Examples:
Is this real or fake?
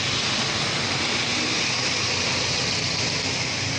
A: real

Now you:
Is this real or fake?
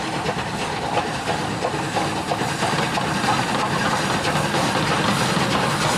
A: real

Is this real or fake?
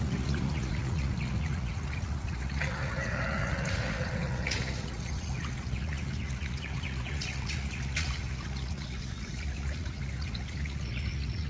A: fake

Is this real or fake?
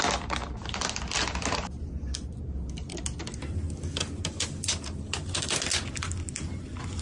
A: real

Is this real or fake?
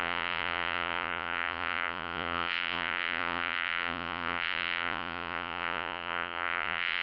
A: fake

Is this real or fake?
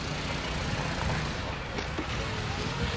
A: real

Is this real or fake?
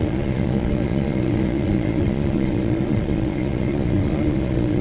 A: fake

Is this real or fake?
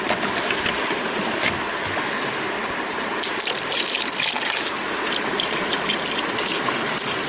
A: real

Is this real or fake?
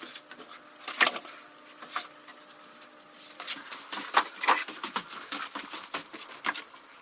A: real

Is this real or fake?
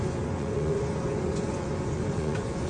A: fake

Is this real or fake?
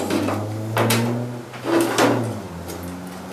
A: real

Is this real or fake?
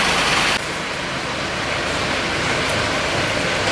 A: real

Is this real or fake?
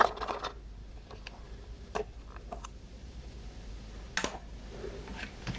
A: real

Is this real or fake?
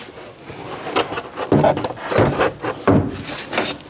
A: real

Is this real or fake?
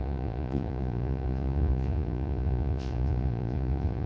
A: fake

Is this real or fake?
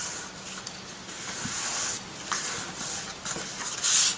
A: real